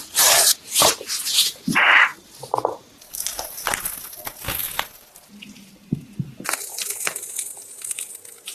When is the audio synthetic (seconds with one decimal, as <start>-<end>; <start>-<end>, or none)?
none